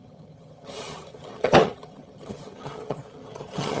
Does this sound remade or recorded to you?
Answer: remade